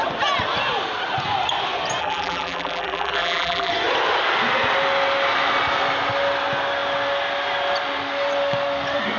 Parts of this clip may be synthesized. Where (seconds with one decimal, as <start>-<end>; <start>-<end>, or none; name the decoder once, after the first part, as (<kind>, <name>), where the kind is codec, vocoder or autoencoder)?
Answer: 2.0-3.7 (vocoder, BigVGAN v2)